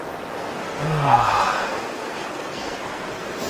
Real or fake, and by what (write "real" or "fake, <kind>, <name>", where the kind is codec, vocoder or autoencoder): fake, codec, SNAC